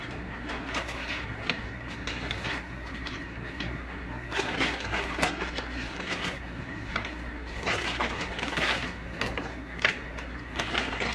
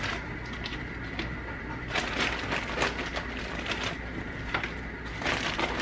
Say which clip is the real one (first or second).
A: second